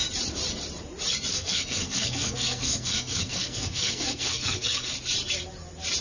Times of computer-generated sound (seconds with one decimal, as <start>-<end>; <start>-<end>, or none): 1.3-4.9